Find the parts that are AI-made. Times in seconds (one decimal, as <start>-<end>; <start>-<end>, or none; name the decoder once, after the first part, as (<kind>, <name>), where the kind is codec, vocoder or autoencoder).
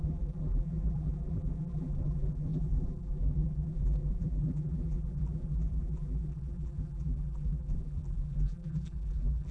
0.0-9.5 (vocoder, BigVGAN v2)